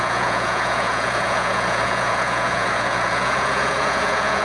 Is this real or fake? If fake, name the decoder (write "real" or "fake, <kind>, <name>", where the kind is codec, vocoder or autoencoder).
fake, vocoder, Vocos